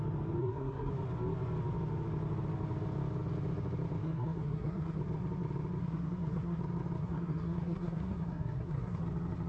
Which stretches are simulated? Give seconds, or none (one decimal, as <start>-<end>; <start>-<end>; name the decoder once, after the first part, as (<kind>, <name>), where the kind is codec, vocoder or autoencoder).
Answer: 0.4-0.9 (codec, SNAC); 4.0-5.0; 5.8-6.6; 7.0-9.0